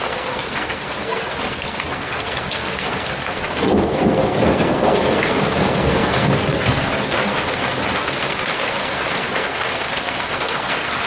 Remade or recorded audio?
remade